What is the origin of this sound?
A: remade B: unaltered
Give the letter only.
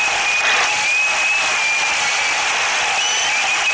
B